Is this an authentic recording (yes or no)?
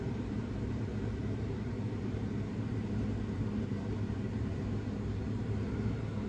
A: no